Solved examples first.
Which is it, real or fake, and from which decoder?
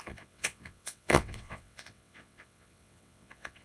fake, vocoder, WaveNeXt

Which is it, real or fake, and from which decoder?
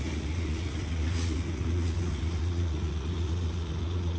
fake, vocoder, Vocos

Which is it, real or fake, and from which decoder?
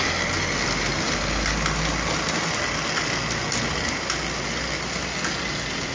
real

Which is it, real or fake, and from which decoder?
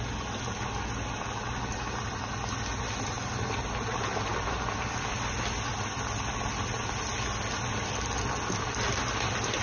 real